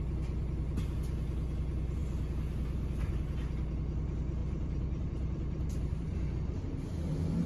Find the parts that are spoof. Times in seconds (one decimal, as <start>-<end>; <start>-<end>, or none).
4.4-6.3